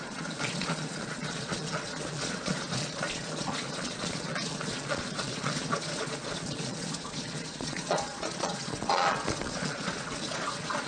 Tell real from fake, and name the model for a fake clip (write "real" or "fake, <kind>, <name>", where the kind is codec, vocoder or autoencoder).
fake, vocoder, Vocos